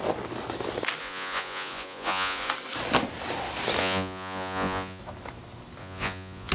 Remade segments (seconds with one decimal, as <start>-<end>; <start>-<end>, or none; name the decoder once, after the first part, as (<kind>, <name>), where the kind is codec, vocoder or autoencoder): 1.0-2.5 (vocoder, Vocos); 3.8-5.0; 5.8-6.5